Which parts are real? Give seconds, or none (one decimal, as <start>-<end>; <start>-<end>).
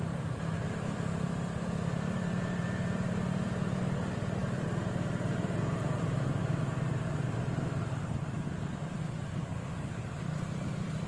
none